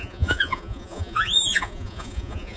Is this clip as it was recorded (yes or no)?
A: no